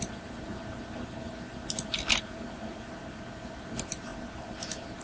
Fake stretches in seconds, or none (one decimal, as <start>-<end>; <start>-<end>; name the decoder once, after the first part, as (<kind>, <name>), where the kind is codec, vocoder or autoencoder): none